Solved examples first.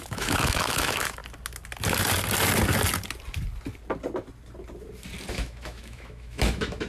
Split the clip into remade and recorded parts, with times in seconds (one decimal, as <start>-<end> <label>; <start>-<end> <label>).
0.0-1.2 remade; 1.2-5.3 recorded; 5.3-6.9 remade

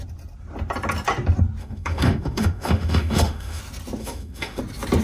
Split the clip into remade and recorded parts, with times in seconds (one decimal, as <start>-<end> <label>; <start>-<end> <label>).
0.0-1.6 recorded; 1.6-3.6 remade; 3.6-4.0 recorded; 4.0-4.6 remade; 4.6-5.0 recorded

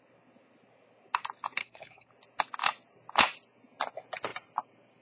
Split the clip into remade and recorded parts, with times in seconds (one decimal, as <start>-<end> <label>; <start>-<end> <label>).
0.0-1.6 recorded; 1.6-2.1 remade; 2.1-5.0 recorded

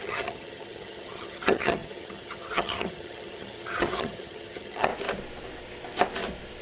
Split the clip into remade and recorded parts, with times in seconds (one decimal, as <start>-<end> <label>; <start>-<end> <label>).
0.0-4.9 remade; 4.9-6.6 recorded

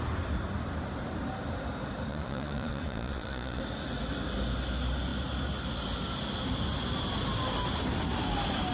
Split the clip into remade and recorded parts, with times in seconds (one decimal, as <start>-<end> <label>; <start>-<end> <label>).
0.0-2.1 recorded; 2.1-3.6 remade; 3.6-8.7 recorded

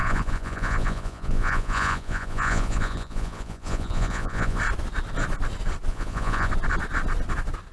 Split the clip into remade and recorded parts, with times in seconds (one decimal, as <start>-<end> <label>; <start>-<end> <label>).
0.0-4.6 remade; 4.6-5.9 recorded; 5.9-6.5 remade; 6.5-7.7 recorded

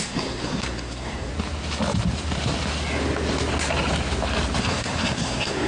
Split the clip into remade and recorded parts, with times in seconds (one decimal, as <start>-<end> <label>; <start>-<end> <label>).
0.0-1.3 remade; 1.3-4.6 recorded; 4.6-5.7 remade

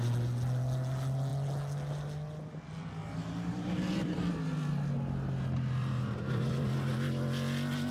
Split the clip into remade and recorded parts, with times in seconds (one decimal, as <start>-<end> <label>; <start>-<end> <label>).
0.0-3.0 recorded; 3.0-4.3 remade; 4.3-5.8 recorded; 5.8-6.9 remade; 6.9-7.9 recorded